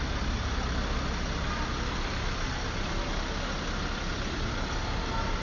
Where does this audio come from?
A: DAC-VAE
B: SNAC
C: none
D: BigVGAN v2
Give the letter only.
C